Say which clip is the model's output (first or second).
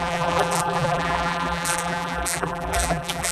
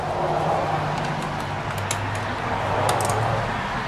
first